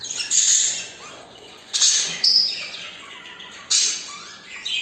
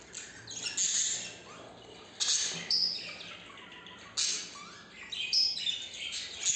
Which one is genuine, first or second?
second